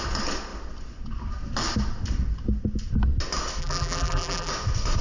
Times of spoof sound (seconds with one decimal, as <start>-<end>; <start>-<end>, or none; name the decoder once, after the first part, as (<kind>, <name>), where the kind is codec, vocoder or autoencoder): 3.6-4.5 (vocoder, BigVGAN v2)